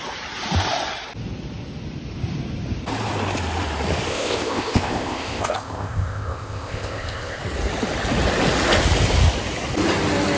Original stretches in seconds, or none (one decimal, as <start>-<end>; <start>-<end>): 0.0-4.1; 7.4-10.4